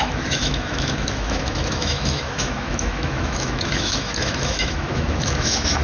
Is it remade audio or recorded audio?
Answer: remade